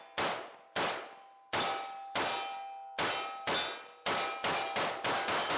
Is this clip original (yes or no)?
yes